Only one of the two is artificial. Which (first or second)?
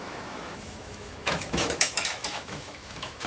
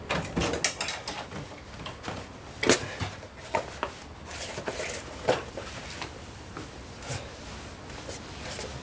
first